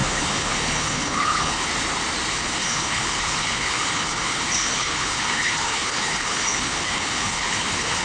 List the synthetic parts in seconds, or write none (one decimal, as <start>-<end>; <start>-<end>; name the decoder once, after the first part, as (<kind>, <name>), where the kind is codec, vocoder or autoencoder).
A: 0.0-1.7 (codec, HILCodec); 2.3-8.0